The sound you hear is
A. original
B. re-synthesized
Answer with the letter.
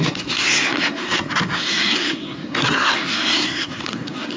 B